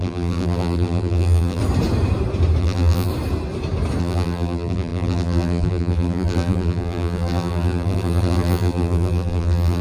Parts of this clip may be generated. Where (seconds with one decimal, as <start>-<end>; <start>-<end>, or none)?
0.0-1.6; 2.6-3.1; 4.0-9.8